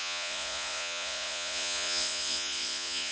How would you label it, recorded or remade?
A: remade